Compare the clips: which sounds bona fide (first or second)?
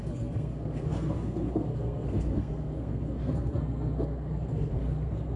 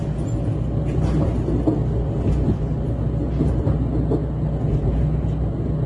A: second